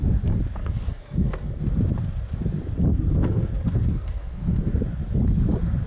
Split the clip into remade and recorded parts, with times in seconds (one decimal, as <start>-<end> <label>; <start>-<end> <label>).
0.0-0.6 recorded; 0.6-1.6 remade; 1.6-3.2 recorded; 3.2-4.7 remade; 4.7-5.9 recorded